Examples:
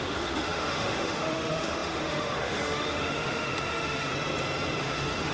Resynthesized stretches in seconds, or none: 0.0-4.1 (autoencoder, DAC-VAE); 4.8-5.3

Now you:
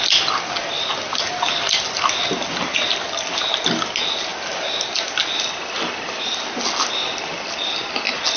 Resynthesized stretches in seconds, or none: none

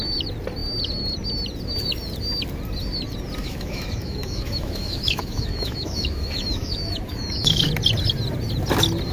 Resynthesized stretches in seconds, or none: 3.4-7.7 (autoencoder, DAC-VAE)

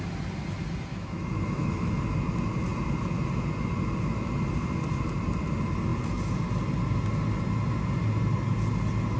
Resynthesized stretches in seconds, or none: 0.9-2.0 (autoencoder, DAC-VAE)

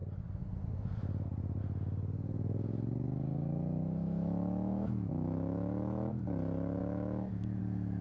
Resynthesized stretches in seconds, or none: 4.0-6.2 (autoencoder, DAC-VAE); 6.8-7.6

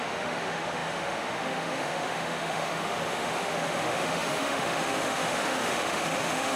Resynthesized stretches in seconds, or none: 0.0-6.6 (autoencoder, DAC-VAE)